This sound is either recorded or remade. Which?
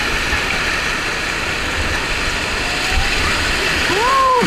remade